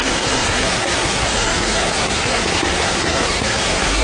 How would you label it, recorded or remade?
remade